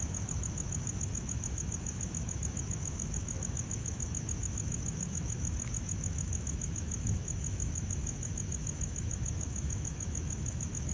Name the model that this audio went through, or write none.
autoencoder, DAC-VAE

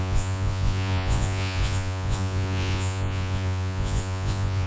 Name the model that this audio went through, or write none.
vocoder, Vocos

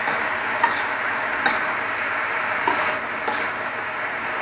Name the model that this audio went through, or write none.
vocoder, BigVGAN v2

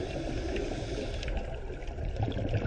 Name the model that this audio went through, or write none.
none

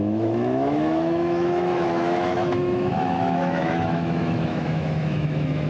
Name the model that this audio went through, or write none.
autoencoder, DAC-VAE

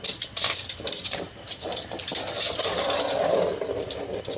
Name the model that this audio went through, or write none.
none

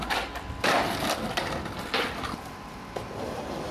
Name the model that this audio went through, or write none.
none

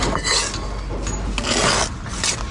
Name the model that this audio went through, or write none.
none